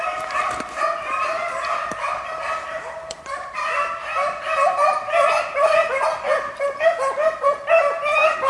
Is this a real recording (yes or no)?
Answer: no